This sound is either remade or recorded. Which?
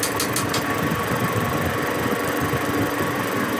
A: recorded